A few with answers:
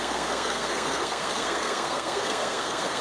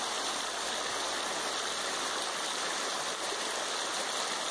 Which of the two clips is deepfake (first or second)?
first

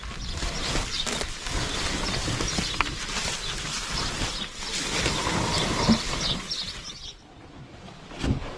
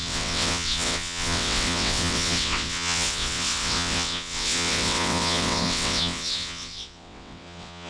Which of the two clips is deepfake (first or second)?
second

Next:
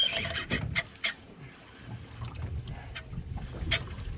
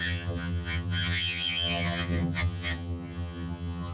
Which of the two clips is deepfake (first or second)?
second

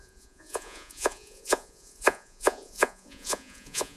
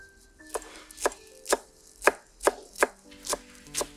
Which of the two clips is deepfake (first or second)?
first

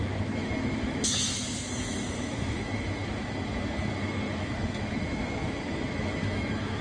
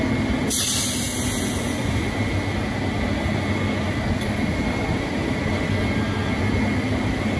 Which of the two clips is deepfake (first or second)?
first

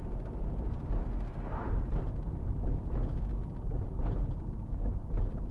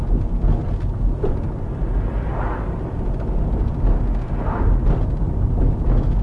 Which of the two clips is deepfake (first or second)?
first